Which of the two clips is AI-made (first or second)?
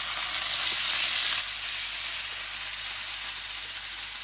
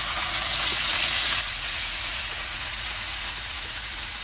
second